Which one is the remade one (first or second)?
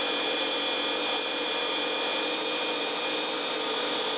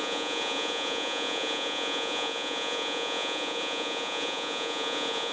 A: second